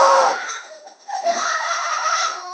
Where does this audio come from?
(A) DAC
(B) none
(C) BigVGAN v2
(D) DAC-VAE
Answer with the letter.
D